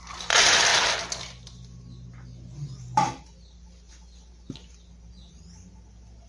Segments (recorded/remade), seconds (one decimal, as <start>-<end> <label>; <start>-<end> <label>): 0.0-6.3 recorded